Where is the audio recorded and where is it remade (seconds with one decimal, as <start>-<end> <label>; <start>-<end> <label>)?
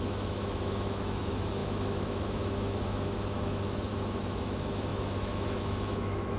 0.0-6.4 remade